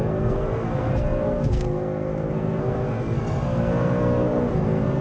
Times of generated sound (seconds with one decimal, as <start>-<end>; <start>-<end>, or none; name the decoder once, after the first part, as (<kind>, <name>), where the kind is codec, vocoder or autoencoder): 0.0-5.0 (codec, SNAC)